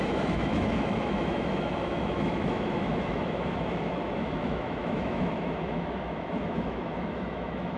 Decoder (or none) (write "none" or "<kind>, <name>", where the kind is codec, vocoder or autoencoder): autoencoder, DAC-VAE